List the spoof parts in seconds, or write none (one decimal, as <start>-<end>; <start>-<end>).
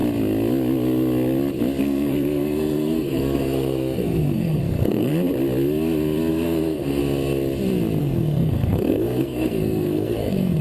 1.8-5.1; 6.3-7.0; 8.0-10.6